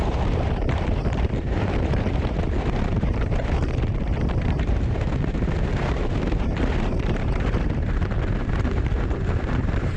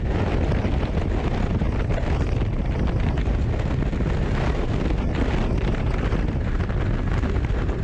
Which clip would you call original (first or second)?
second